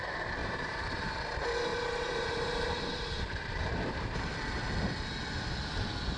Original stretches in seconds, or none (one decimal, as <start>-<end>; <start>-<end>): 0.0-0.4; 1.1-1.7; 4.3-6.2